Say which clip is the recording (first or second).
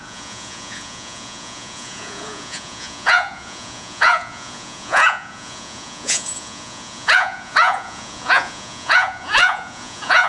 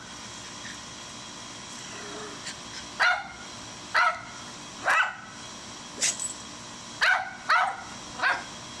second